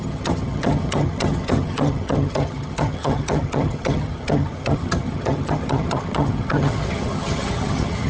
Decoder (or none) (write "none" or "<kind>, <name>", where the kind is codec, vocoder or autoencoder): vocoder, HiFi-GAN